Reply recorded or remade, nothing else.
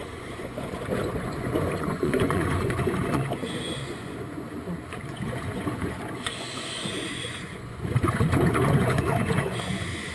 remade